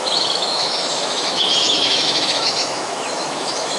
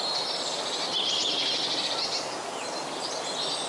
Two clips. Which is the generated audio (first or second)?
first